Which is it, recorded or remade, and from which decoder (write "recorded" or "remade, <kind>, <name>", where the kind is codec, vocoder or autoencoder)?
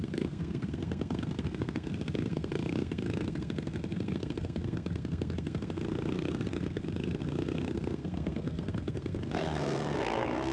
remade, codec, SNAC